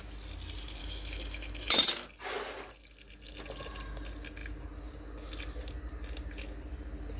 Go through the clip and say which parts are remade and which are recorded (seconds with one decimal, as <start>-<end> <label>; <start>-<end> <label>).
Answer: 0.0-0.8 recorded; 0.8-1.8 remade; 1.8-7.2 recorded